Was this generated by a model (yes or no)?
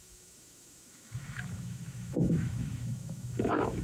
yes